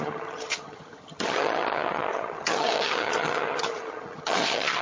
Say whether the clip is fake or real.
fake